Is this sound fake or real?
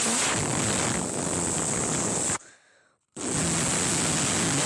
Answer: real